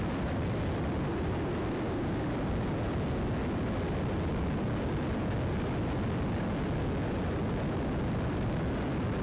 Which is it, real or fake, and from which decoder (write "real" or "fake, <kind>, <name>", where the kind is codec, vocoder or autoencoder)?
real